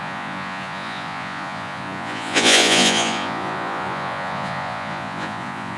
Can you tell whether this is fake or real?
fake